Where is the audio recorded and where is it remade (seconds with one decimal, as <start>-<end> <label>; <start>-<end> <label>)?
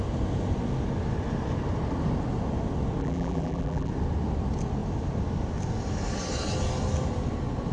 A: 0.0-3.0 recorded; 3.0-3.9 remade; 3.9-7.7 recorded